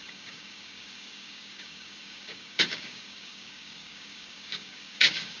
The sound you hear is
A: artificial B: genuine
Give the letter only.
A